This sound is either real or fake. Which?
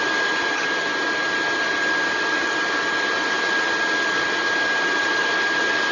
real